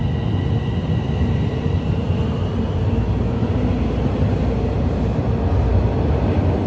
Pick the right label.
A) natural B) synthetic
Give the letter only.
A